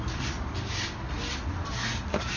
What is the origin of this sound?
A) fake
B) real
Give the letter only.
B